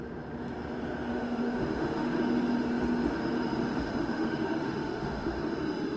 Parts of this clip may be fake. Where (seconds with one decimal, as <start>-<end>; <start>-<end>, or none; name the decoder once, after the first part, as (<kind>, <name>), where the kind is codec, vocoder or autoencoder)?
1.1-2.2 (autoencoder, DAC-VAE); 3.7-5.4

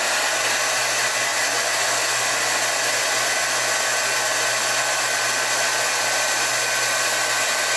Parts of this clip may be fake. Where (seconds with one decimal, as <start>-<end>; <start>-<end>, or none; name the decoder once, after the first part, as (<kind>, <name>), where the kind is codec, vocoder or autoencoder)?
none

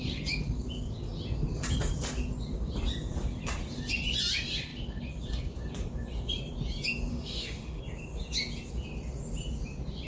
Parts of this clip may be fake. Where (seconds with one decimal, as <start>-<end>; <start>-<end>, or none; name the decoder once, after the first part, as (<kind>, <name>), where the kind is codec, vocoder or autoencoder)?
7.1-7.8 (autoencoder, DAC-VAE)

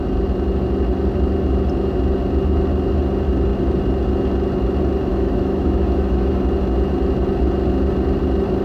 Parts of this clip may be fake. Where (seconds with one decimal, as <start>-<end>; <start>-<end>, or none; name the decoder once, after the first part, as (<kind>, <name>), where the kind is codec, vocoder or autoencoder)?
5.1-6.4 (autoencoder, DAC-VAE)

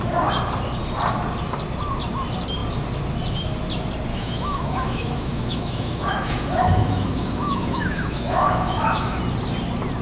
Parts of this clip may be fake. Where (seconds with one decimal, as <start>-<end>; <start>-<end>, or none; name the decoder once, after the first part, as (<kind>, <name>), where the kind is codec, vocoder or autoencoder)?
4.1-9.2 (autoencoder, DAC-VAE)

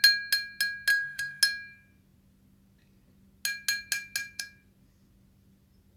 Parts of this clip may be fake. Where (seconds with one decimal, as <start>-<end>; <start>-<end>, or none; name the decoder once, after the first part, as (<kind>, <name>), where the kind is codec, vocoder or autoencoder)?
0.9-1.4 (autoencoder, DAC-VAE)

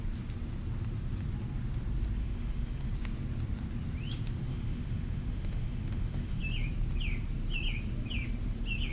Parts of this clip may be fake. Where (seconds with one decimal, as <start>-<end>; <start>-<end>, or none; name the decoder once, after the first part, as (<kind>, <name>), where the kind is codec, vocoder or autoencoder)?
2.2-2.9 (autoencoder, DAC-VAE); 4.5-6.4